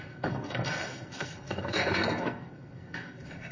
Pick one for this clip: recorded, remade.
remade